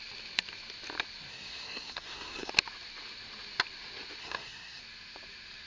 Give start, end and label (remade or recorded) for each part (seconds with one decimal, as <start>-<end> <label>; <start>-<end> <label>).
0.0-1.3 recorded; 1.3-2.5 remade; 2.5-4.2 recorded; 4.2-4.8 remade; 4.8-5.7 recorded